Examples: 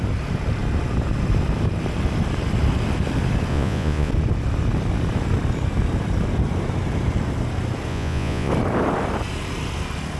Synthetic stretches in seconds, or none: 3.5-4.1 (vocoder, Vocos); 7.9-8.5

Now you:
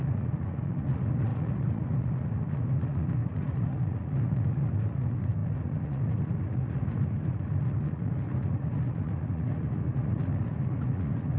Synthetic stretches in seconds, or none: 0.0-11.4 (vocoder, Vocos)

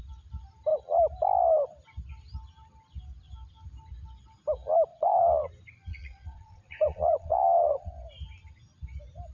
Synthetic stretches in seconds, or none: 4.9-5.5 (vocoder, Vocos); 5.9-7.9

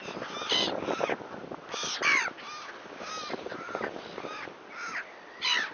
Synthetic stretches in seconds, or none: none

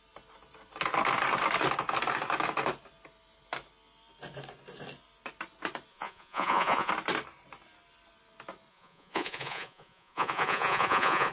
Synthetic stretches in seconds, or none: 5.9-6.9 (vocoder, Vocos); 8.7-11.3

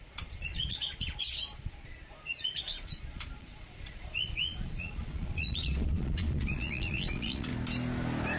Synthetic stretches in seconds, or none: 0.0-7.5 (vocoder, Vocos)